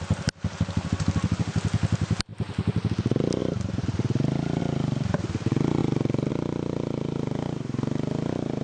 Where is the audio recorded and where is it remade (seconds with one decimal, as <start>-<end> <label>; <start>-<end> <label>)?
0.0-8.6 recorded